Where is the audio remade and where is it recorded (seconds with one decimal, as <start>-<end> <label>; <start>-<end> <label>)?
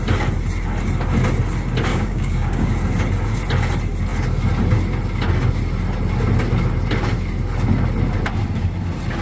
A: 0.0-1.9 recorded; 1.9-2.7 remade; 2.7-9.2 recorded